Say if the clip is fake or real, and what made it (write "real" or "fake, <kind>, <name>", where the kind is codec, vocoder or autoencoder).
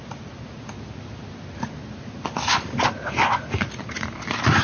real